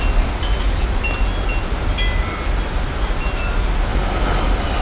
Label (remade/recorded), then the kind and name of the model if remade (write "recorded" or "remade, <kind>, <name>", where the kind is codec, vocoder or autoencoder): recorded